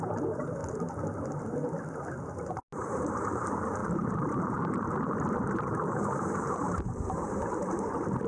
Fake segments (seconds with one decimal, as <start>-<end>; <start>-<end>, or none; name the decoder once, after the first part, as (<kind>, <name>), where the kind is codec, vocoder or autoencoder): 0.0-0.6 (vocoder, BigVGAN v2); 2.8-8.3